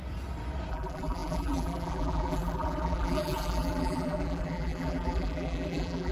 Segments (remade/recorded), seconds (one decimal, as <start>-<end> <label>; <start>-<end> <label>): 0.0-0.7 recorded; 0.7-6.1 remade